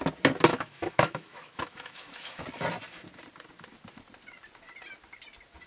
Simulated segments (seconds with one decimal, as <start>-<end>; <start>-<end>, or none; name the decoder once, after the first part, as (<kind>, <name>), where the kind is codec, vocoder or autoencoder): 0.5-2.4 (autoencoder, DAC-VAE)